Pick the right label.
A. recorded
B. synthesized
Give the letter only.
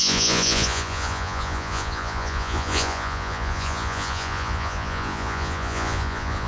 B